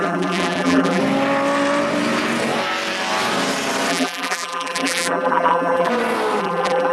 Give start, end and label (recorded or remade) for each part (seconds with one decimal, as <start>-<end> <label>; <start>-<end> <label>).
0.0-1.0 remade; 1.0-3.9 recorded; 3.9-5.9 remade; 5.9-6.4 recorded; 6.4-6.9 remade